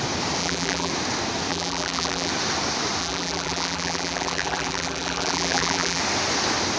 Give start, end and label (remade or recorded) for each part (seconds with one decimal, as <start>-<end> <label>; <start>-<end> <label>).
0.0-0.4 recorded; 0.4-0.9 remade; 0.9-1.5 recorded; 1.5-2.3 remade; 2.3-3.0 recorded; 3.0-6.0 remade; 6.0-6.8 recorded